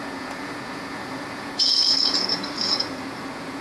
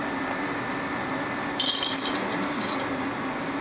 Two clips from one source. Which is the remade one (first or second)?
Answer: first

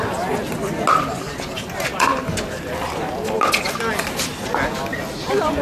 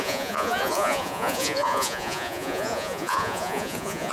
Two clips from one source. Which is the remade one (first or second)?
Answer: second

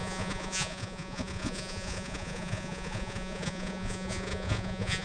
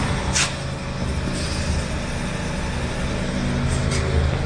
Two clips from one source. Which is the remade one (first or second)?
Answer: first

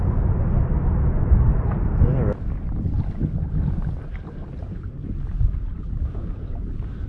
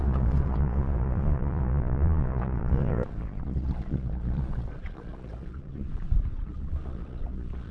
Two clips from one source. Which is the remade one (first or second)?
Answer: second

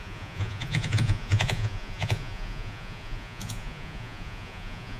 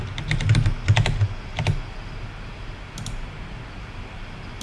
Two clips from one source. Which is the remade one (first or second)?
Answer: first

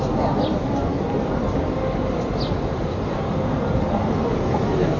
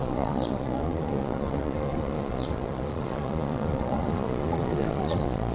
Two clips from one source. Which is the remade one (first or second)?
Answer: second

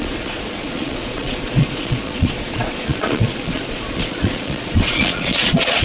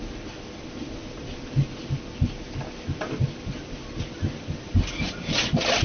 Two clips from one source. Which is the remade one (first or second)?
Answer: first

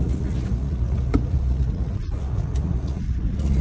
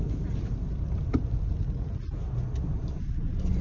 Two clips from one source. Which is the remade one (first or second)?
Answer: first